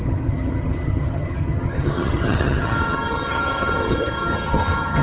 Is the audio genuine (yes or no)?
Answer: no